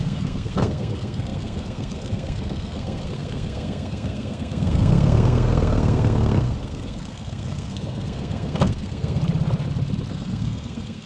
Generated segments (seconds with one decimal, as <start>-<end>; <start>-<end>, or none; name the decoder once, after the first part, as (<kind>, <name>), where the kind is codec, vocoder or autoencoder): 0.0-9.2 (codec, SNAC); 10.1-11.1